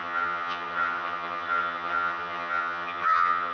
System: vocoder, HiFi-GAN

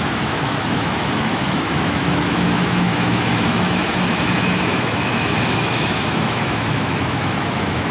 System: autoencoder, DAC-VAE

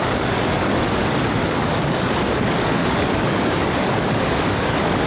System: codec, DAC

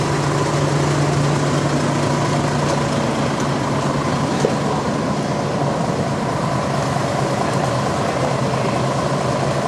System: none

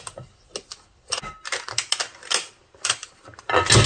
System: none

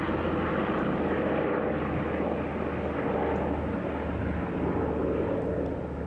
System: none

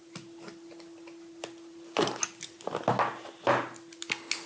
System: none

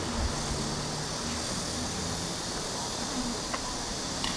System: none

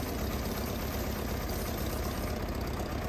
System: vocoder, BigVGAN v2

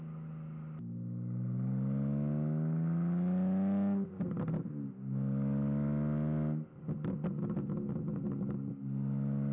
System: none